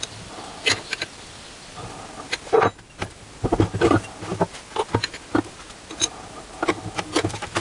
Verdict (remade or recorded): recorded